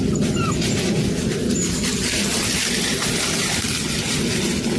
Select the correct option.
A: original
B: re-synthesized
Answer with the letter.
A